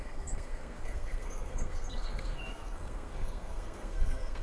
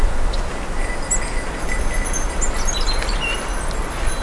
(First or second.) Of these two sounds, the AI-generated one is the first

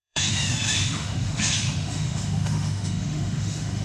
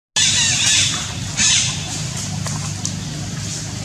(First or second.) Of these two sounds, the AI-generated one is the first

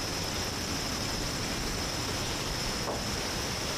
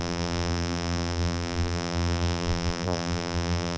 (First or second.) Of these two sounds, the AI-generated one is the second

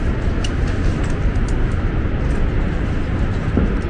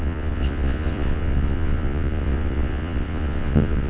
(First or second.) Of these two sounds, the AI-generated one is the second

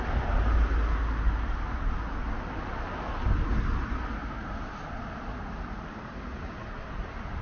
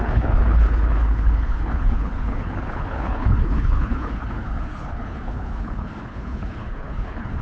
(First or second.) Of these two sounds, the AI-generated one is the second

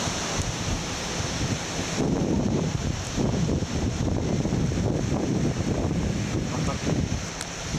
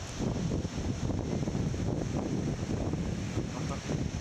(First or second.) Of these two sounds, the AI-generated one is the first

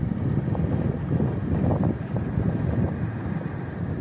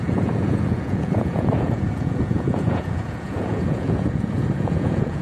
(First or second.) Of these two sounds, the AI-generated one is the second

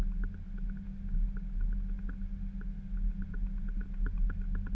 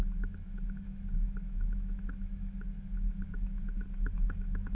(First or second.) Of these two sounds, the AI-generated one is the second